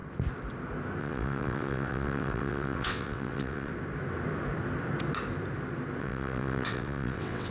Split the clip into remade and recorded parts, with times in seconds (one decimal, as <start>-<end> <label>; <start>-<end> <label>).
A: 0.0-1.0 recorded; 1.0-3.7 remade; 3.7-6.0 recorded; 6.0-7.5 remade